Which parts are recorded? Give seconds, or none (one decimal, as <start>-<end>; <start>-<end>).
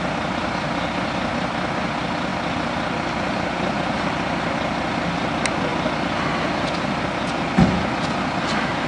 0.0-8.9